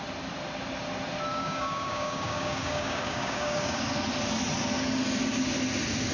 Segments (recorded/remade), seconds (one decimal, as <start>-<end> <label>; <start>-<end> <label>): 0.0-1.3 recorded; 1.3-3.8 remade; 3.8-6.1 recorded